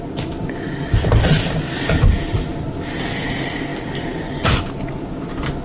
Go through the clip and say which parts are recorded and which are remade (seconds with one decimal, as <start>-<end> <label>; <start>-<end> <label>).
0.0-5.6 recorded